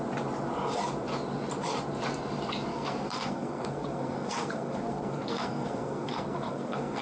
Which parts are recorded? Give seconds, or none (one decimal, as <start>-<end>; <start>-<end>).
0.0-2.7